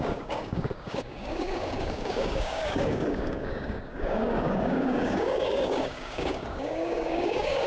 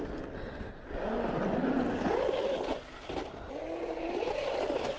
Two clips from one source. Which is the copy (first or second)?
first